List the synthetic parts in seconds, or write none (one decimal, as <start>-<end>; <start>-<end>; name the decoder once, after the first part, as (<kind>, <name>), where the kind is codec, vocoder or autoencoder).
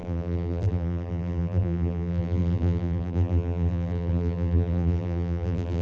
0.0-5.8 (vocoder, BigVGAN v2)